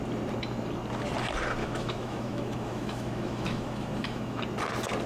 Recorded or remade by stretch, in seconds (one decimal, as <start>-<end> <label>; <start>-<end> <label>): 0.0-1.6 recorded; 1.6-4.4 remade; 4.4-5.1 recorded